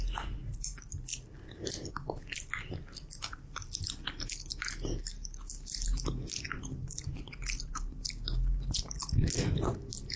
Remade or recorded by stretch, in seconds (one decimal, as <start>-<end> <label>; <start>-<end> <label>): 0.0-10.2 recorded

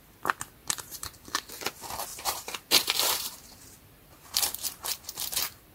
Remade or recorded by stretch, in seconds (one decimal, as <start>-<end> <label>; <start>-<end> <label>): 0.0-0.6 recorded; 0.6-1.5 remade; 1.5-2.1 recorded; 2.1-5.7 remade

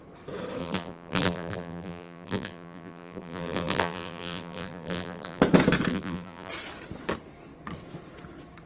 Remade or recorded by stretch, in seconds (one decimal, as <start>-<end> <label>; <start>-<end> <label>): 0.0-0.6 recorded; 0.6-5.4 remade; 5.4-5.9 recorded; 5.9-6.5 remade; 6.5-8.7 recorded

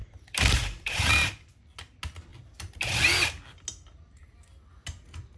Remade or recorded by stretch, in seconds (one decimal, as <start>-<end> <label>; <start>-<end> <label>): 0.0-1.1 remade; 1.1-2.3 recorded; 2.3-3.0 remade; 3.0-5.4 recorded

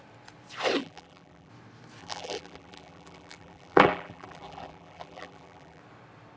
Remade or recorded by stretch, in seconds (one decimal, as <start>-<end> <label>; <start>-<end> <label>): 0.0-0.8 recorded; 0.8-1.5 remade; 1.5-2.0 recorded; 2.0-5.8 remade; 5.8-6.4 recorded

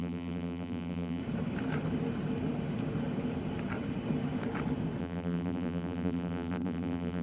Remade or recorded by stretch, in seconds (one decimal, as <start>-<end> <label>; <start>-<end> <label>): 0.0-1.2 remade; 1.2-5.0 recorded; 5.0-7.2 remade

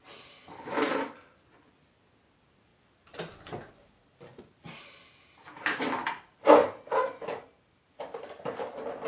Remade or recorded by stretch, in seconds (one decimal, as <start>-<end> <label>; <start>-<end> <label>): 0.0-2.7 recorded; 2.7-5.8 remade; 5.8-6.6 recorded; 6.6-8.6 remade; 8.6-9.1 recorded